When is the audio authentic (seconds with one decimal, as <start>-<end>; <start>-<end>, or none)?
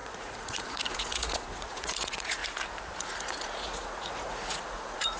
2.4-3.0